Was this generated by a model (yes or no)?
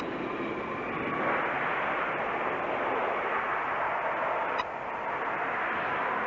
no